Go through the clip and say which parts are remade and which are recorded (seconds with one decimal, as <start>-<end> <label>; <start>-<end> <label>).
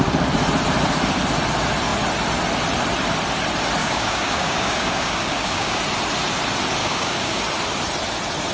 0.0-3.8 recorded; 3.8-5.8 remade; 5.8-6.8 recorded; 6.8-7.4 remade; 7.4-8.5 recorded